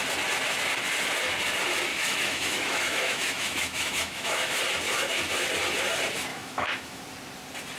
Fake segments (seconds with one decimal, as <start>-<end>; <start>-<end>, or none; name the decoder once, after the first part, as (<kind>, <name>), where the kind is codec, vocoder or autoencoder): 1.9-4.6 (autoencoder, DAC-VAE); 6.3-7.0